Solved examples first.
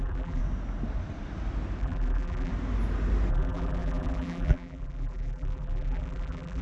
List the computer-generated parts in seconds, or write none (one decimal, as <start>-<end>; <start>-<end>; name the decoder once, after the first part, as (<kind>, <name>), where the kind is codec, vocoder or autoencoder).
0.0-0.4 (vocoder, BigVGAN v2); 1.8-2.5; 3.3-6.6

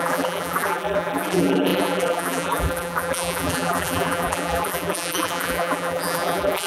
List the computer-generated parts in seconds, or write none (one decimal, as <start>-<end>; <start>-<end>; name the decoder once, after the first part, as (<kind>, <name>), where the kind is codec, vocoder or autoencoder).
0.0-6.7 (vocoder, BigVGAN v2)

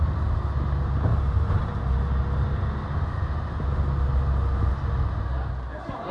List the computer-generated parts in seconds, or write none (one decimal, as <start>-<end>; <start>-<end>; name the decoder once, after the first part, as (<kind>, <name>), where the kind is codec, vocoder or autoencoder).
1.1-1.6 (vocoder, BigVGAN v2)